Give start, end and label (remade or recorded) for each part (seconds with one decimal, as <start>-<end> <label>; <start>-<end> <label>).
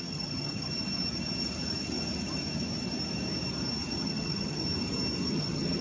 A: 0.0-0.7 remade; 0.7-4.0 recorded; 4.0-4.6 remade; 4.6-5.3 recorded; 5.3-5.8 remade